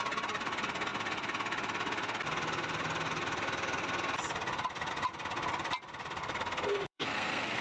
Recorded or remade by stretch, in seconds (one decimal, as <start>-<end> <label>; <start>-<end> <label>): 0.0-6.2 recorded; 6.2-7.6 remade

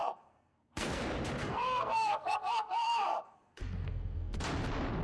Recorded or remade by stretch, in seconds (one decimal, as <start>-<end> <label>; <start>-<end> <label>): 0.0-1.0 remade; 1.0-1.4 recorded; 1.4-4.4 remade; 4.4-5.0 recorded

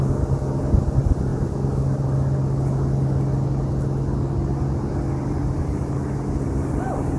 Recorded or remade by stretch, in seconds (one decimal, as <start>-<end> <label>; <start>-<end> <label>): 0.0-7.2 recorded

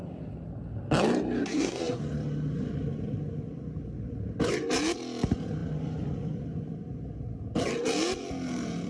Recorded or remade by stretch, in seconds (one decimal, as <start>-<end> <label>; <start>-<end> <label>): 0.0-1.4 recorded; 1.4-2.0 remade; 2.0-8.9 recorded

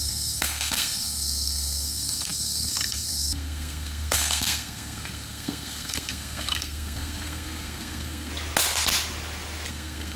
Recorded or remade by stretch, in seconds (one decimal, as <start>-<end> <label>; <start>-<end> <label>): 0.0-8.3 remade; 8.3-9.7 recorded; 9.7-10.2 remade

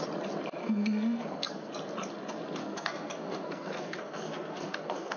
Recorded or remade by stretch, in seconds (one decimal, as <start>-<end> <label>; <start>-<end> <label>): 0.0-0.6 recorded; 0.6-1.7 remade; 1.7-2.6 recorded; 2.6-5.2 remade

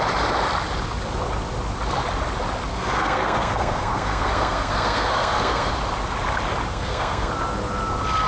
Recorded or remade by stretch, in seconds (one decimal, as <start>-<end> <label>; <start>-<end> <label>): 0.0-2.7 recorded; 2.7-5.7 remade; 5.7-6.7 recorded; 6.7-7.3 remade; 7.3-8.3 recorded

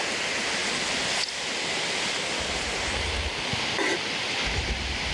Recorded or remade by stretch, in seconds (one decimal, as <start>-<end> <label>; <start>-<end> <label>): 0.0-5.1 recorded